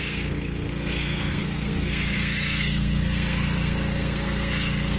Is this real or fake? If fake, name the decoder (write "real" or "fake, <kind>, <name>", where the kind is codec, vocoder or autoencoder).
fake, codec, SNAC